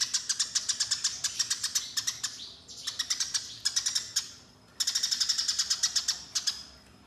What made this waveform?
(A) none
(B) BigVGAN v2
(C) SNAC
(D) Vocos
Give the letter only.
A